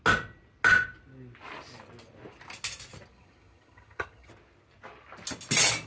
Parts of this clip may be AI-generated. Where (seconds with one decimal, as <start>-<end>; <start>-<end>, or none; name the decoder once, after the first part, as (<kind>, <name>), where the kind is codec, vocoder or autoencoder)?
3.1-4.3 (vocoder, HiFi-GAN)